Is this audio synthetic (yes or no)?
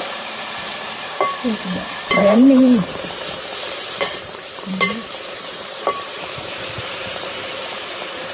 yes